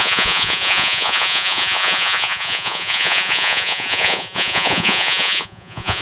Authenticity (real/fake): fake